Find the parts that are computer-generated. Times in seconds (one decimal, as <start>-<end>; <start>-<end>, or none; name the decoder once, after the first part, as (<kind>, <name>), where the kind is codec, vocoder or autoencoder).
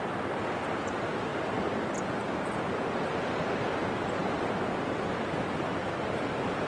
0.0-1.3 (vocoder, BigVGAN v2); 3.7-6.7